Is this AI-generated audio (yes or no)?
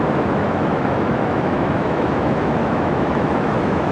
yes